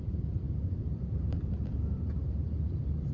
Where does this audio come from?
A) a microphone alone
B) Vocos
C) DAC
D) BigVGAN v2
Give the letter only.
D